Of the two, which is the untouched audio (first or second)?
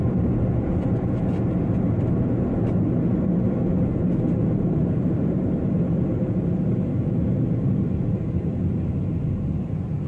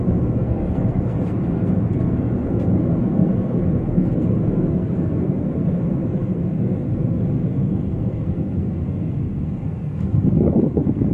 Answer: first